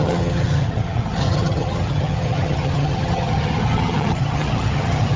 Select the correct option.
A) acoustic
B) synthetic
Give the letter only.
B